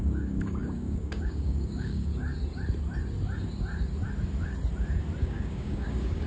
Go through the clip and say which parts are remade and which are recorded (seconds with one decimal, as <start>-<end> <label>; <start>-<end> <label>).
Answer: 0.0-2.1 remade; 2.1-5.2 recorded; 5.2-6.3 remade